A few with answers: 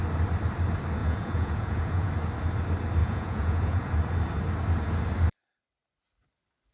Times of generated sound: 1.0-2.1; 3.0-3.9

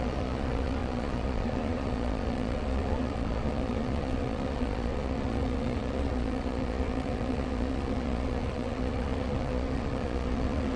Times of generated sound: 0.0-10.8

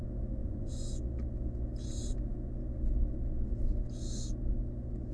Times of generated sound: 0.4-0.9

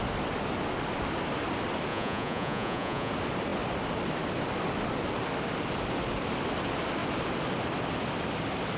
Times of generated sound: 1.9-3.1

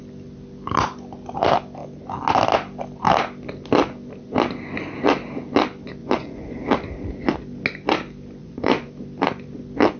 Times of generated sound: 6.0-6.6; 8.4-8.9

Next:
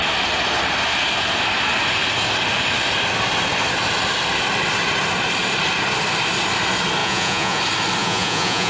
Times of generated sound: 7.0-7.6; 8.0-8.7